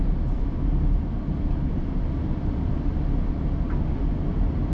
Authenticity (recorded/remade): recorded